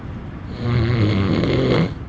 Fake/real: real